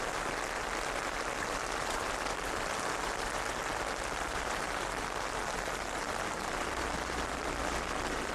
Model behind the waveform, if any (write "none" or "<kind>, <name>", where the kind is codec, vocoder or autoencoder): none